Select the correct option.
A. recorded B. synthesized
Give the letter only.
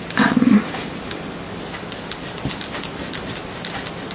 A